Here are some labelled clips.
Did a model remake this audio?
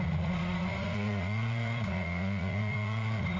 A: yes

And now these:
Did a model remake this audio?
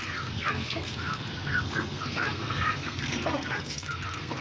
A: yes